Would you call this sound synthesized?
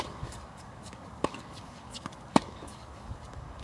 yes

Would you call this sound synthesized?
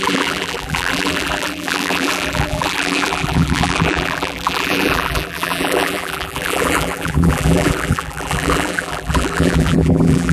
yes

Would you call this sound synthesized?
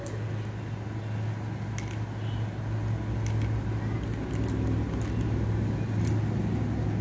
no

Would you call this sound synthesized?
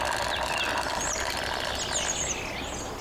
no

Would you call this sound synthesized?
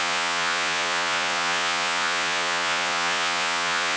yes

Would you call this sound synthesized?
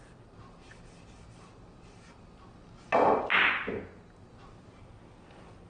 no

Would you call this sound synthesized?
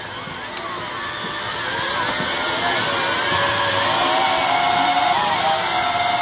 no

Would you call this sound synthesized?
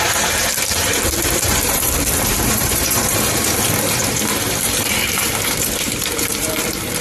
yes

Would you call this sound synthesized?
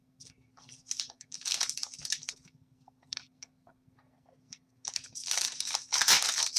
yes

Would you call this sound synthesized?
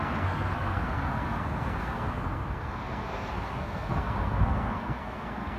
yes